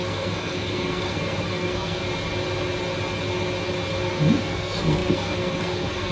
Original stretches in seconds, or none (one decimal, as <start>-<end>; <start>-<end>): 2.0-4.1